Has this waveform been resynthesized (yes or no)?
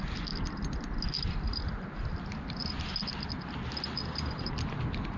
no